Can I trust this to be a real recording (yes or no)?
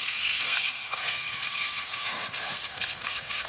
no